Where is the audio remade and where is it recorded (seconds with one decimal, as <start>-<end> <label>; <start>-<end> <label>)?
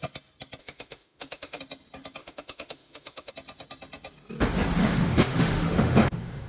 0.0-0.6 recorded; 0.6-1.6 remade; 1.6-2.2 recorded; 2.2-3.3 remade; 3.3-4.8 recorded; 4.8-6.5 remade